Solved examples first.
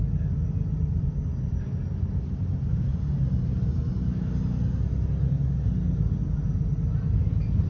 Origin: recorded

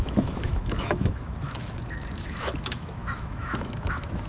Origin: remade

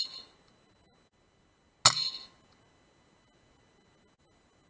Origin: recorded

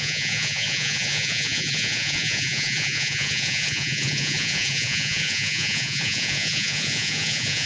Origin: remade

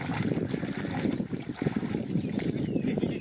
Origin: recorded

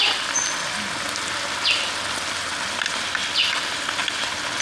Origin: recorded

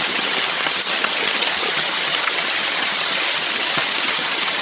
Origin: remade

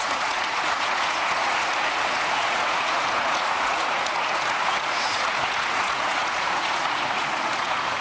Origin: remade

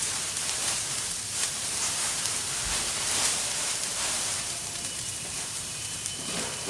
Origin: remade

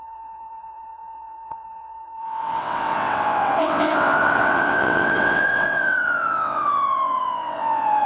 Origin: remade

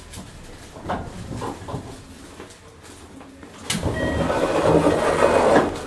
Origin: recorded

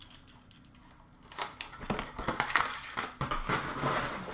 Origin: recorded